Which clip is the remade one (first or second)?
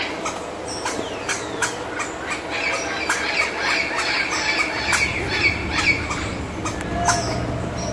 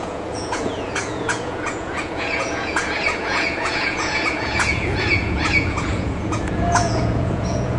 second